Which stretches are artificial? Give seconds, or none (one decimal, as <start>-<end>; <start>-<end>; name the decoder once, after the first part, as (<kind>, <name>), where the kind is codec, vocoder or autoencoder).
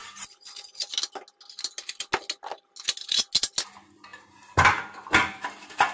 none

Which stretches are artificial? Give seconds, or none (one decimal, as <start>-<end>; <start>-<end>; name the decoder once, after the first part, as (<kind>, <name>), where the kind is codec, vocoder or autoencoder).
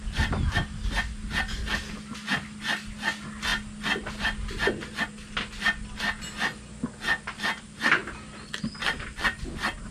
none